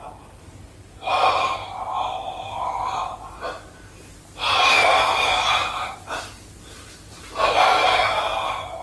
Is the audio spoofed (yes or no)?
no